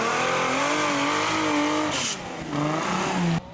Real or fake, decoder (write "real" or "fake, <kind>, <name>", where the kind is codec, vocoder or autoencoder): real